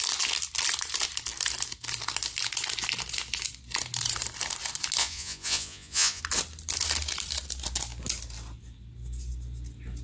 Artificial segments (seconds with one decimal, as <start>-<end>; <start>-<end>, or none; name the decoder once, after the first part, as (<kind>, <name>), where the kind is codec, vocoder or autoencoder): 5.0-6.2 (vocoder, Vocos)